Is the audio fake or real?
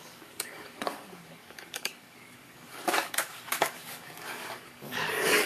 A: fake